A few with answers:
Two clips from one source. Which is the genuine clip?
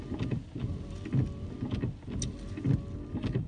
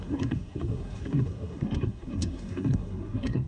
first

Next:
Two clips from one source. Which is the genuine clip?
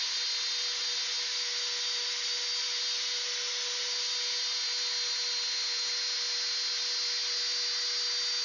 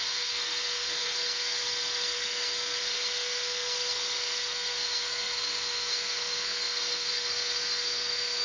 first